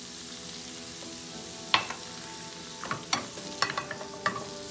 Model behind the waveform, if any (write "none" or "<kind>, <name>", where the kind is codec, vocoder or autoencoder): none